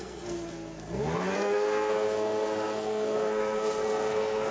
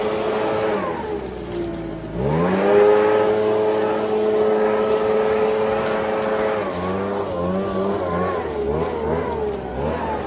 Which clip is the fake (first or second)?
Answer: first